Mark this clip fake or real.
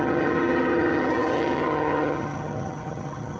fake